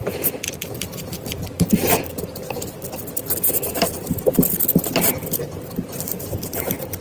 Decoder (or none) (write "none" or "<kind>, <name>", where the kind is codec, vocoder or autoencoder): none